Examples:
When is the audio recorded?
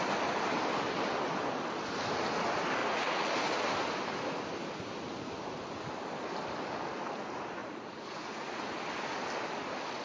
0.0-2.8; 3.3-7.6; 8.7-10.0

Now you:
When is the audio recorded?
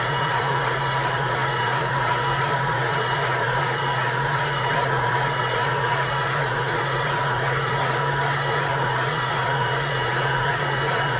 8.0-8.5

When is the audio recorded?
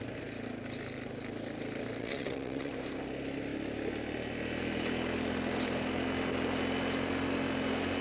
0.0-2.0; 2.7-8.0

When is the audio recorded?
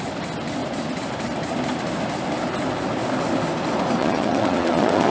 0.0-4.0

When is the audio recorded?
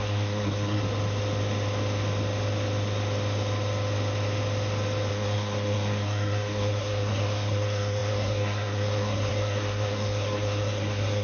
0.8-5.1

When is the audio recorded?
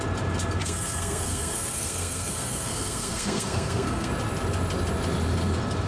0.0-0.6; 4.1-5.9